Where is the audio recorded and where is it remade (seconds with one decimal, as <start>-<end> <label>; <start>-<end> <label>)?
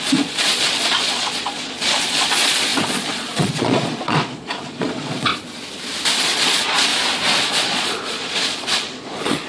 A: 0.0-5.3 remade; 5.3-6.2 recorded; 6.2-6.9 remade; 6.9-7.4 recorded; 7.4-9.5 remade